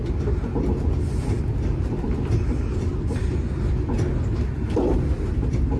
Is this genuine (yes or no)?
yes